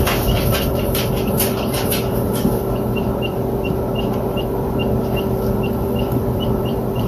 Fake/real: fake